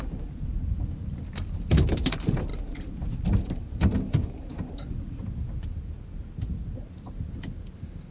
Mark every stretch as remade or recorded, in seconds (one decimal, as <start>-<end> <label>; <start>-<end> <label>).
0.0-8.1 recorded